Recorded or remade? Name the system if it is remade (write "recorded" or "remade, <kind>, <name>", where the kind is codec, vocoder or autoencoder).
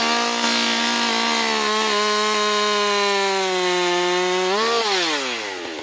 recorded